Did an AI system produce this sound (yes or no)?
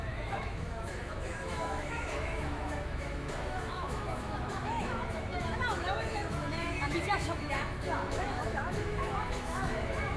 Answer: yes